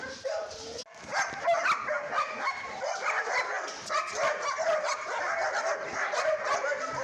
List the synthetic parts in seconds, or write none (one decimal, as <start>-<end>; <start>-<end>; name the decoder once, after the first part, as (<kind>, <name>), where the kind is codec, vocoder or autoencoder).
none